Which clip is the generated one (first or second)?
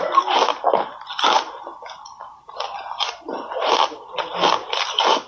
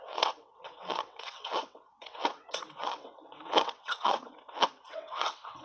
second